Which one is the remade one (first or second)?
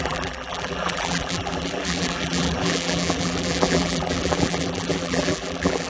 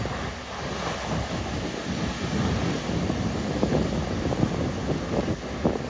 first